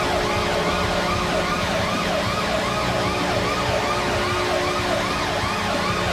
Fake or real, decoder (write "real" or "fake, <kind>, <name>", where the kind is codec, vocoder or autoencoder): real